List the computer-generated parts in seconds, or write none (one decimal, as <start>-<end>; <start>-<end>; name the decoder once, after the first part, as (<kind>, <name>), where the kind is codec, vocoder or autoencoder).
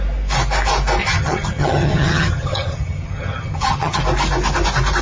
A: 1.0-4.0 (vocoder, HiFi-GAN)